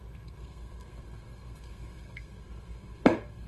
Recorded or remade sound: remade